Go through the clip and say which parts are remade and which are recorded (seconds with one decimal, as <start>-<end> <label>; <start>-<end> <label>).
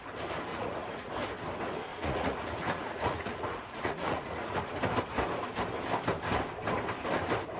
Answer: 0.0-0.5 recorded; 0.5-1.1 remade; 1.1-1.9 recorded; 1.9-4.7 remade; 4.7-7.6 recorded